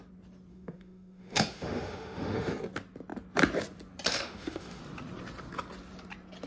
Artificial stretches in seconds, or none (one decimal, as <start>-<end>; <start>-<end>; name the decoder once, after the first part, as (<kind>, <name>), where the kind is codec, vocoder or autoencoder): 0.5-2.5 (autoencoder, DAC-VAE); 4.1-4.8